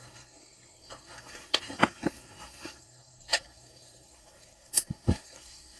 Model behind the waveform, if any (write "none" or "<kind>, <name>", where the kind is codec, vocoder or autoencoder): codec, SNAC